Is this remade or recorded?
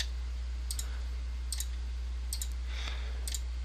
recorded